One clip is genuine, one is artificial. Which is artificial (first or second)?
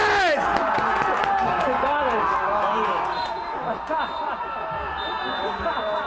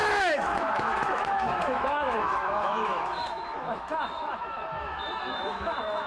second